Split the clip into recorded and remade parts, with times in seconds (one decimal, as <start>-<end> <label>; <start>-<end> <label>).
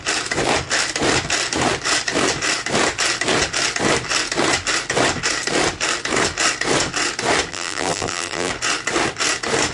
0.0-7.5 recorded; 7.5-8.5 remade; 8.5-9.7 recorded